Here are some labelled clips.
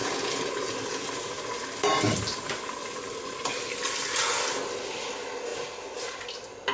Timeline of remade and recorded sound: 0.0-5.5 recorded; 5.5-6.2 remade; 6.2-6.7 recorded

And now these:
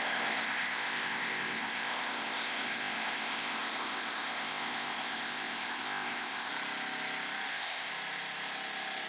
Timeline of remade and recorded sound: 0.0-6.5 remade; 6.5-7.5 recorded; 7.5-7.9 remade; 7.9-9.1 recorded

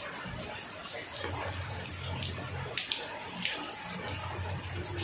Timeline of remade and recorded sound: 0.0-5.0 recorded

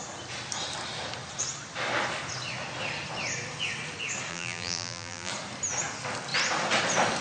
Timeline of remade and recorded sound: 0.0-4.3 recorded; 4.3-5.3 remade; 5.3-7.2 recorded

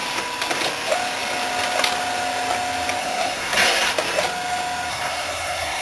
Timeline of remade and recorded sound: 0.0-3.0 recorded; 3.0-3.9 remade; 3.9-4.9 recorded; 4.9-5.8 remade